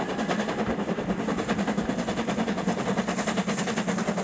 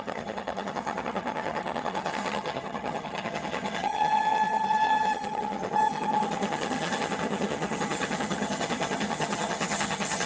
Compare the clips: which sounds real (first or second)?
first